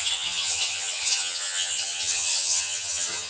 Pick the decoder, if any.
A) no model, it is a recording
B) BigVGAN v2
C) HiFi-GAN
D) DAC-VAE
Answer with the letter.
C